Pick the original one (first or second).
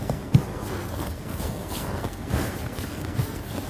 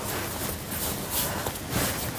second